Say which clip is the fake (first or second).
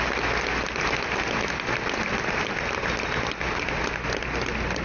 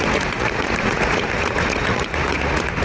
second